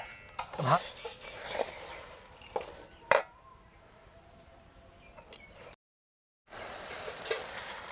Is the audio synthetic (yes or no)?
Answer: no